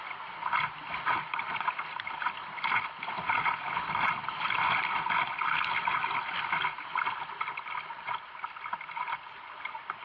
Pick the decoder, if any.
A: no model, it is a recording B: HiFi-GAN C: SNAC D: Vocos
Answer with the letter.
A